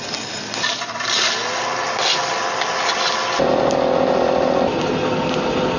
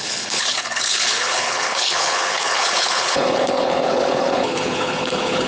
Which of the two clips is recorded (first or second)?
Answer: first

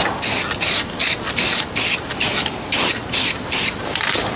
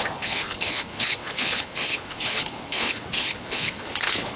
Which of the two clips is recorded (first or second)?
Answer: first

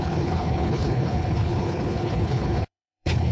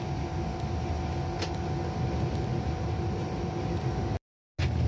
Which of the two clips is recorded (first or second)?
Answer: second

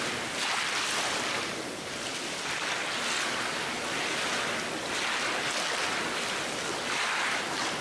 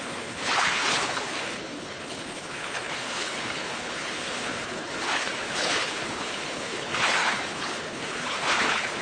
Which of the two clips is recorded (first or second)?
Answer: first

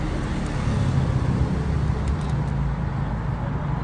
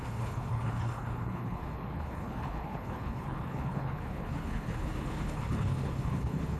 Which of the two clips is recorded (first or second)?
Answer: first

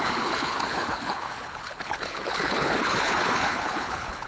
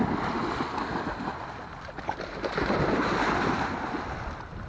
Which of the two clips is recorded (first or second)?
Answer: second